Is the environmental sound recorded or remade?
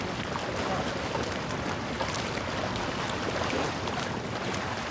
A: recorded